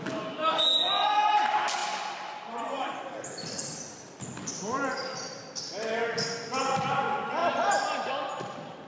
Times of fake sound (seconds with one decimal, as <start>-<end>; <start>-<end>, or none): 1.8-5.5; 7.4-8.1